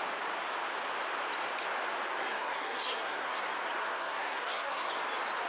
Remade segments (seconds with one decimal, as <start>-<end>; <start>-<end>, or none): 2.2-3.4; 3.8-4.9